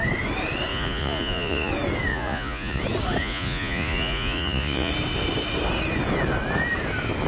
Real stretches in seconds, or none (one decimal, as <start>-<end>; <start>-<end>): 0.0-0.7; 1.7-2.1; 2.8-3.2; 4.9-7.3